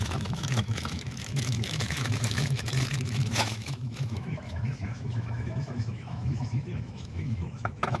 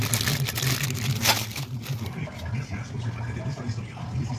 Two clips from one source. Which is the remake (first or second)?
first